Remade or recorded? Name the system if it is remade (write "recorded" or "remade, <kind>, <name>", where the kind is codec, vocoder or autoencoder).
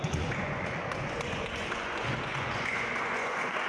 remade, vocoder, Vocos